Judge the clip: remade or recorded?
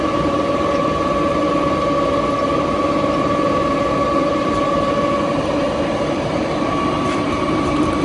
remade